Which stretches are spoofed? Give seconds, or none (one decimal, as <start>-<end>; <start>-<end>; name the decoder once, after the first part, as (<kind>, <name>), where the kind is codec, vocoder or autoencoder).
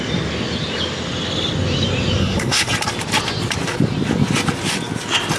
2.2-2.7 (codec, SNAC)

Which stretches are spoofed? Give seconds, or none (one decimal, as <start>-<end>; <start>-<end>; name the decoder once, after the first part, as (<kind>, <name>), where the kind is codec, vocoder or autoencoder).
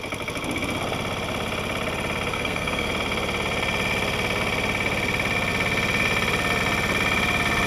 2.3-2.9 (codec, SNAC)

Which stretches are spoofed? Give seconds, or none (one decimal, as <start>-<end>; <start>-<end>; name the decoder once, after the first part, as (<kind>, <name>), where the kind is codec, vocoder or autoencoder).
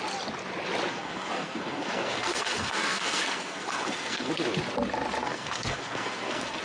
0.9-4.3 (codec, SNAC); 5.2-6.6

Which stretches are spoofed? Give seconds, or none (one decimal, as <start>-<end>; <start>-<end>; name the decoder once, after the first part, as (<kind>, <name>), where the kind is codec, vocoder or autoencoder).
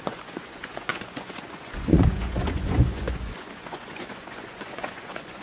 0.0-5.4 (vocoder, Vocos)